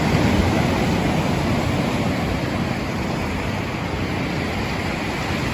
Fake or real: real